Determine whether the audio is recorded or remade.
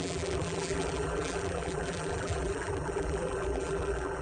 remade